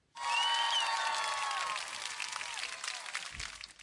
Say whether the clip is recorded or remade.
recorded